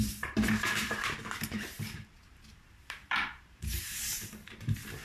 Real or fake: fake